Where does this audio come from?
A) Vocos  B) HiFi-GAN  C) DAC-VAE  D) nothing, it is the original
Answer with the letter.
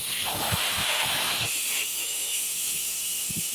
C